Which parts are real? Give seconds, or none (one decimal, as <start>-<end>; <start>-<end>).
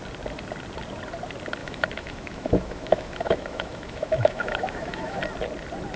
0.0-1.6; 5.2-6.0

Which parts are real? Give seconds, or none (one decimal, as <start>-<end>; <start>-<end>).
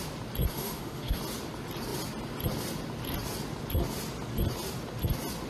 0.0-0.5; 1.2-5.5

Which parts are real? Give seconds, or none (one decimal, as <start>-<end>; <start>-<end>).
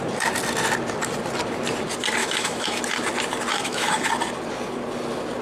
0.0-2.2; 2.8-3.5; 4.1-5.4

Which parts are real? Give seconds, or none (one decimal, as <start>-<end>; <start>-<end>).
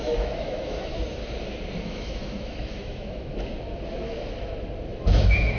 0.9-1.8; 3.5-4.9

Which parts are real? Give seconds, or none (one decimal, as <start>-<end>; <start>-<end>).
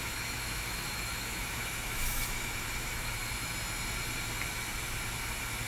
3.2-5.7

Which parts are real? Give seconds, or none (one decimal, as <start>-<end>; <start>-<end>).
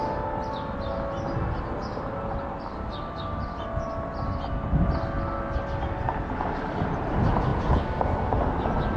0.0-9.0